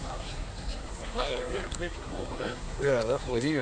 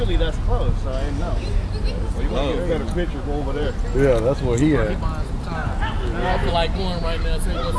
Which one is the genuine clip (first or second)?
second